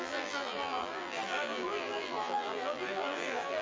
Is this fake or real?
fake